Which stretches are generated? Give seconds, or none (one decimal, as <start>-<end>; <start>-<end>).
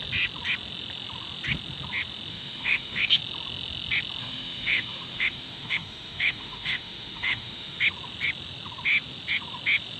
2.3-3.2; 4.2-7.8